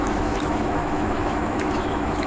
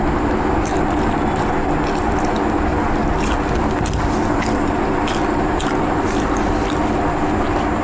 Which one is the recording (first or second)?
second